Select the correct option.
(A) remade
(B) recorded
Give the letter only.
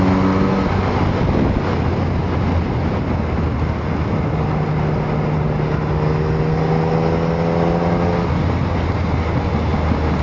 B